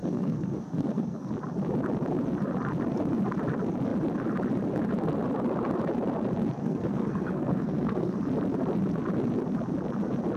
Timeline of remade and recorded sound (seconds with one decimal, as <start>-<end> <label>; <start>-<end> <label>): 0.0-1.3 remade; 1.3-6.6 recorded; 6.6-8.2 remade; 8.2-10.4 recorded